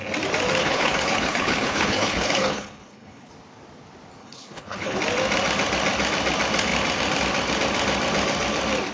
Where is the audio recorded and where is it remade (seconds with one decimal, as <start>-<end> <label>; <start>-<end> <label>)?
0.0-0.6 recorded; 0.6-3.3 remade; 3.3-4.2 recorded; 4.2-5.0 remade; 5.0-8.9 recorded